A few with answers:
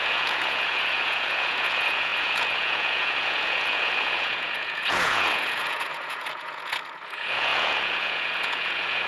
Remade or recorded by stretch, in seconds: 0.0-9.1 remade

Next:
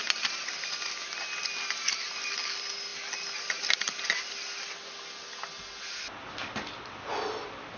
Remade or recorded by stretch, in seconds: 0.0-7.8 recorded

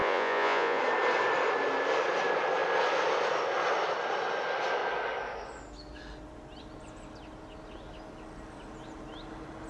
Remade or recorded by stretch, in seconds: 0.0-0.8 remade; 0.8-9.7 recorded

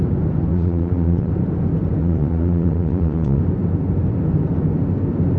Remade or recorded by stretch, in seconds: 0.0-0.5 recorded; 0.5-1.3 remade; 1.3-2.0 recorded; 2.0-3.4 remade; 3.4-5.4 recorded

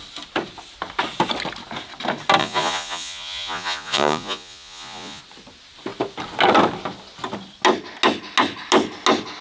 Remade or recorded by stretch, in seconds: 0.0-2.4 recorded; 2.4-5.2 remade; 5.2-9.4 recorded

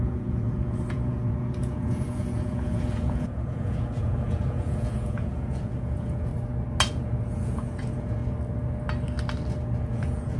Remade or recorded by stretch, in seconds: 0.0-6.3 remade; 6.3-6.9 recorded; 6.9-8.2 remade; 8.2-9.8 recorded; 9.8-10.4 remade